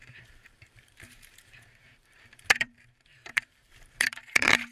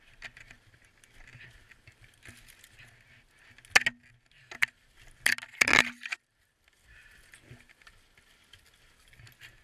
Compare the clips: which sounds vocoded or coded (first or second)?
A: first